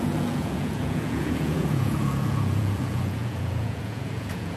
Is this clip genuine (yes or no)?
no